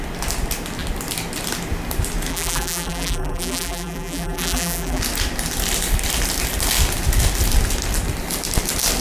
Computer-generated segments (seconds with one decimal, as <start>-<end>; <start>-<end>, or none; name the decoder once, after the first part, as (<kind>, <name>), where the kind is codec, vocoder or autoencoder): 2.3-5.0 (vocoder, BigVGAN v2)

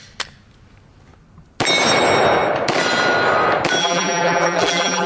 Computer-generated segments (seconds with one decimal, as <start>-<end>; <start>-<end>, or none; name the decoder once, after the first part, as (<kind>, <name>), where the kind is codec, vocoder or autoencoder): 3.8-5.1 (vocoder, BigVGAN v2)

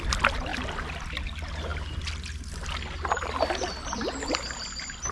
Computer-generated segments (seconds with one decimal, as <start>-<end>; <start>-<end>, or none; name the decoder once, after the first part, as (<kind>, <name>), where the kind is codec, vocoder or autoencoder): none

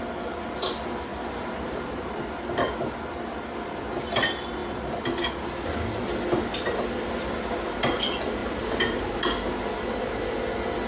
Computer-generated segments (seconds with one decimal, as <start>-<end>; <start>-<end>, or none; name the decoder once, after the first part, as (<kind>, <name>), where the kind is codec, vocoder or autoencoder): 1.1-2.2 (vocoder, BigVGAN v2); 8.4-9.2

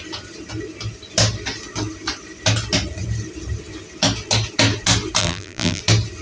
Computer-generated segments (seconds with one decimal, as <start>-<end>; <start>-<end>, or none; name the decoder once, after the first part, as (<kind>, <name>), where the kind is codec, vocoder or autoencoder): 5.2-5.8 (vocoder, BigVGAN v2)